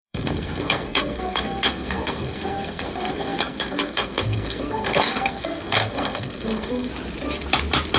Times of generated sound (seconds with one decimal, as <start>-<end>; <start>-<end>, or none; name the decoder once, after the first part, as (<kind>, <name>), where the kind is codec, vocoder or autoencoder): 0.0-6.9 (codec, SNAC)